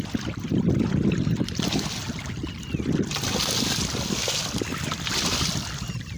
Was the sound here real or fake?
real